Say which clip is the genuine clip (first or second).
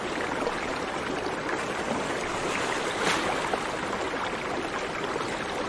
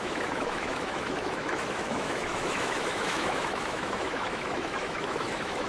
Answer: first